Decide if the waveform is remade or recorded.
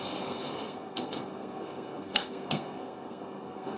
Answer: remade